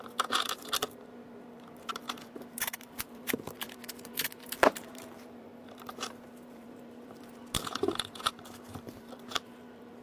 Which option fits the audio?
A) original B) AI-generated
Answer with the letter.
B